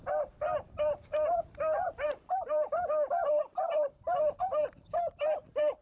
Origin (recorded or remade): remade